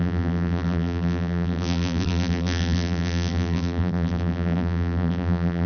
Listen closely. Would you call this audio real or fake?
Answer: fake